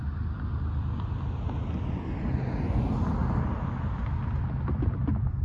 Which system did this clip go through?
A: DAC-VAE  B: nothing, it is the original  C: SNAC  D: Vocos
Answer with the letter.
B